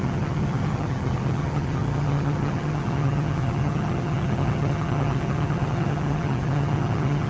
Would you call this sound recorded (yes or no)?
no